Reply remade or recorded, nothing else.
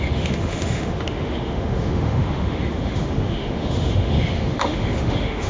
remade